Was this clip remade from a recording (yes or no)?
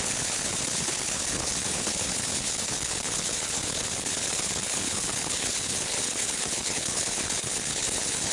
yes